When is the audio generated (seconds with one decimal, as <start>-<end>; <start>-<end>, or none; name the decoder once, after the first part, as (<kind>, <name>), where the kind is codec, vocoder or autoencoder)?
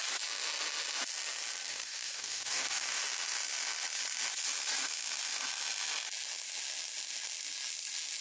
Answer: 1.7-3.0 (codec, DAC)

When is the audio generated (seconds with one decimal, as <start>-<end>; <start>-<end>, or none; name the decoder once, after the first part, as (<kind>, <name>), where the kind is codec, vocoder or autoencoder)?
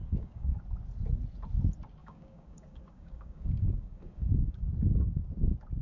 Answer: 0.0-0.6 (codec, DAC); 2.0-4.7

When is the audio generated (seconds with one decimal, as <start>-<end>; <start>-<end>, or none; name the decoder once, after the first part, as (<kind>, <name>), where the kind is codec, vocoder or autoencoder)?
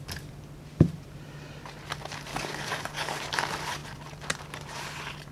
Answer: 2.3-3.2 (codec, DAC)